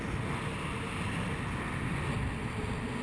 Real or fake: real